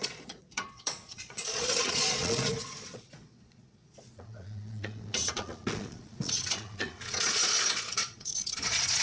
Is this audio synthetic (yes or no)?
yes